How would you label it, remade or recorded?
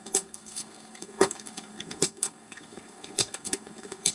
remade